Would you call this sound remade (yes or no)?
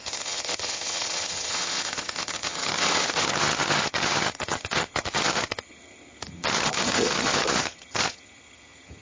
yes